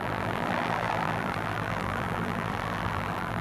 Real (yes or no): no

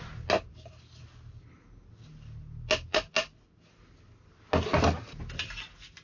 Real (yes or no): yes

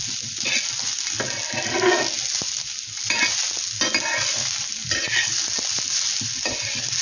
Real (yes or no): yes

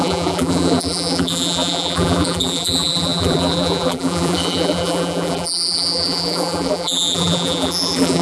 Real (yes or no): no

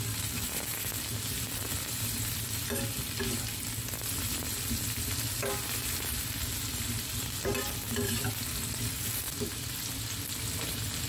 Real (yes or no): yes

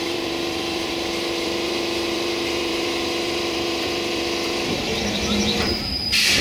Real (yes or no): no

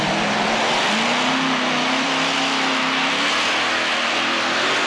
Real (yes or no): no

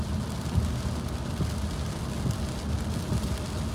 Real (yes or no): yes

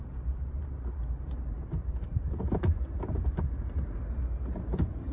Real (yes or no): no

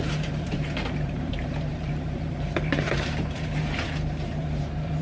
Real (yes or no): no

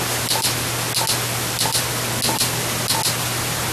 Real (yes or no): yes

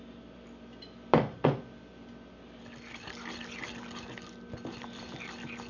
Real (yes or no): yes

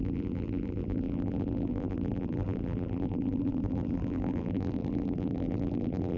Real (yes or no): no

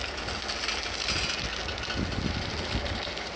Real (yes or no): yes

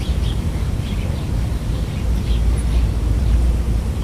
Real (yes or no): no